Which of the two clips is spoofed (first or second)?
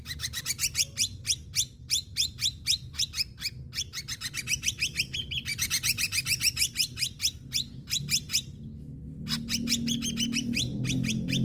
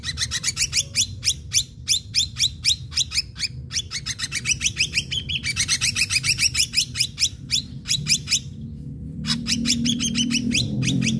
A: second